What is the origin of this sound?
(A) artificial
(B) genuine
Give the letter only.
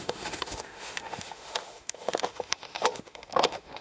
A